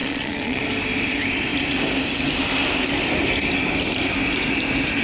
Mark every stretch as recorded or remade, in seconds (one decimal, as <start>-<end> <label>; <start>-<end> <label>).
0.0-0.6 remade; 0.6-5.0 recorded